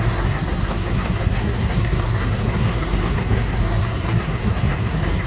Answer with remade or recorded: remade